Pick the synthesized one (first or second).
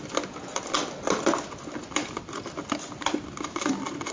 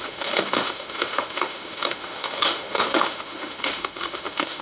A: second